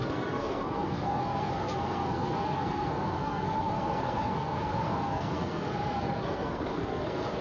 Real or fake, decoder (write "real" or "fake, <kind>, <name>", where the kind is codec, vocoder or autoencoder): fake, codec, SNAC